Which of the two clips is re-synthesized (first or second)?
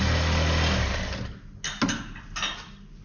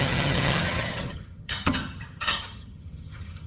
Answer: second